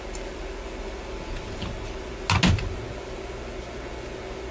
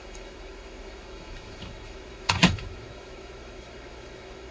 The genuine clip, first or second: first